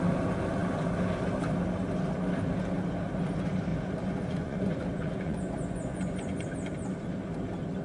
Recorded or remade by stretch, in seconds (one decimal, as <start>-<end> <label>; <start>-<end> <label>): 0.0-3.7 recorded; 3.7-6.5 remade; 6.5-7.8 recorded